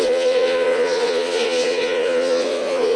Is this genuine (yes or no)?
no